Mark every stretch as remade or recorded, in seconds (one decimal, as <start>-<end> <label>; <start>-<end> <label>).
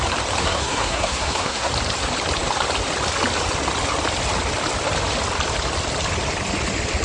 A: 0.0-0.4 recorded; 0.4-1.7 remade; 1.7-7.0 recorded